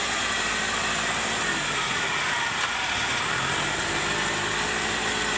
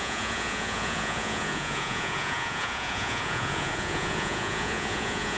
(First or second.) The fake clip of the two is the second